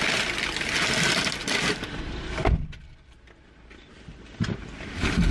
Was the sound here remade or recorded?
recorded